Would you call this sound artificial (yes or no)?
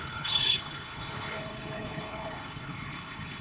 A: yes